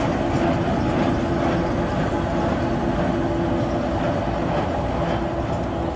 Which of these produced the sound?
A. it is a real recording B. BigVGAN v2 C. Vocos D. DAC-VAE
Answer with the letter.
A